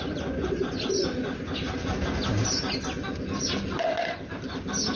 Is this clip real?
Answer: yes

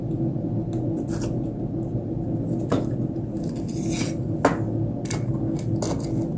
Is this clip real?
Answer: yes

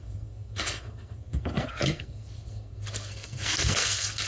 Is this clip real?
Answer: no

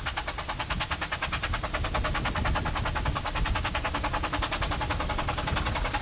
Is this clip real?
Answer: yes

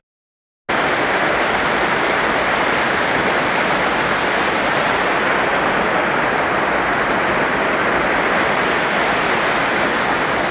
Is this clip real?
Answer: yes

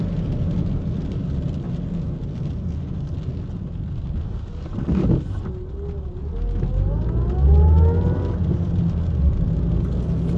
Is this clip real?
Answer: yes